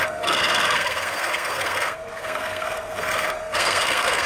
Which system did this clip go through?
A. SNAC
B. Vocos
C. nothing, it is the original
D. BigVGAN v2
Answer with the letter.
A